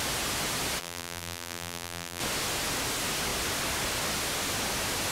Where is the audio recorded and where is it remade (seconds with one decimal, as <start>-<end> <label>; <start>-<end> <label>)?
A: 0.0-0.8 recorded; 0.8-2.2 remade; 2.2-5.1 recorded